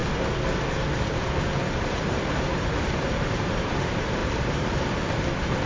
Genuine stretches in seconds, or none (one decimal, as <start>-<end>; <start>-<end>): 0.0-1.8

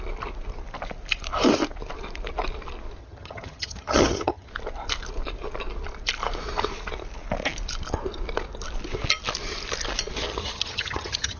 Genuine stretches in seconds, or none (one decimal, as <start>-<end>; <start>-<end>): 0.0-3.0; 4.5-10.3

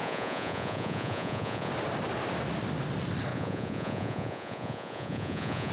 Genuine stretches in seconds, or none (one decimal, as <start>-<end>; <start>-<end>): 1.7-3.3

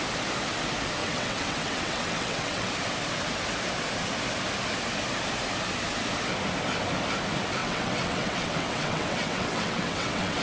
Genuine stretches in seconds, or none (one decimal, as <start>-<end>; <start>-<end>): 0.0-1.0; 2.7-7.6

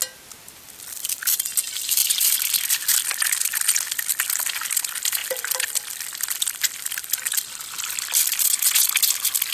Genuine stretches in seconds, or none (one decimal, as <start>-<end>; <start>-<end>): 0.0-9.5

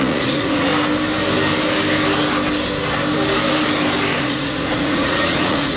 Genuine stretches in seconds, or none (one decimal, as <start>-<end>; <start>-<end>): 0.7-4.2

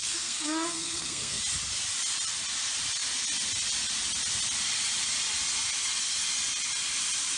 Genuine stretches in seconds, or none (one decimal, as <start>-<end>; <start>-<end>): 1.4-7.4

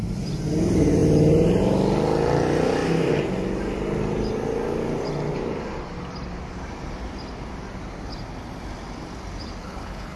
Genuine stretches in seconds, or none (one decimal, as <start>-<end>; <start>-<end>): 0.0-9.6